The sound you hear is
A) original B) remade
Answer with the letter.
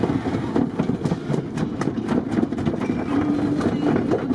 A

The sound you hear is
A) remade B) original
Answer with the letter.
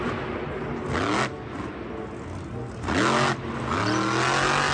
B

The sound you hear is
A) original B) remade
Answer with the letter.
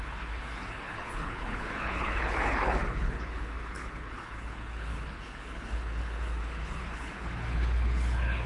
B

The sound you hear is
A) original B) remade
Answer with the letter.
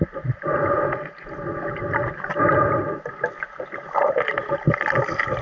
A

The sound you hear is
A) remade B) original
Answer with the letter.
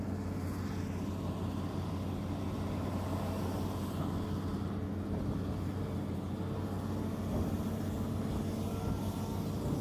B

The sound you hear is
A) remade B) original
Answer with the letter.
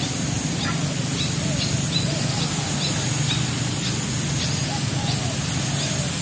B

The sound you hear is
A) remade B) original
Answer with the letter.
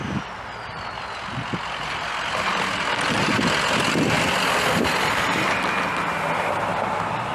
B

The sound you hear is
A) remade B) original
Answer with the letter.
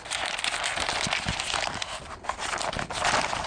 B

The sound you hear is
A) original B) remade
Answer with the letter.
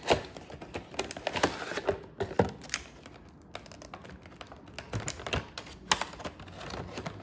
A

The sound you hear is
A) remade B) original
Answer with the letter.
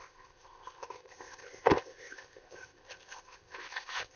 A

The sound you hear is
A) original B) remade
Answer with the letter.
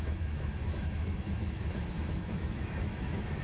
B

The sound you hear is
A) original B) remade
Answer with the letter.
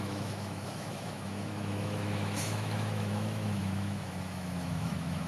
B